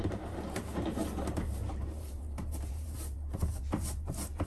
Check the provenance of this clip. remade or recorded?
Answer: remade